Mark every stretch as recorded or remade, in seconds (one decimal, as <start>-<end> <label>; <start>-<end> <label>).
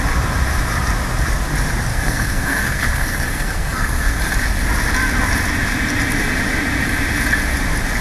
0.0-1.9 recorded; 1.9-4.2 remade; 4.2-8.0 recorded